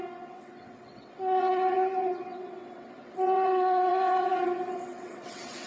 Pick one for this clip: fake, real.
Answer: fake